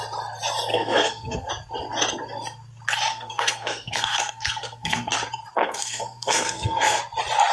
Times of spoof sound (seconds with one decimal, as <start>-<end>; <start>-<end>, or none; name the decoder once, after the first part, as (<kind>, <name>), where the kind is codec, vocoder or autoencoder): 0.7-1.5 (codec, SNAC); 3.1-5.1; 5.6-7.0